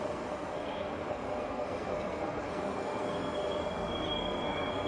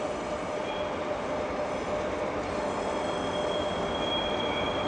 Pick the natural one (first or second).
second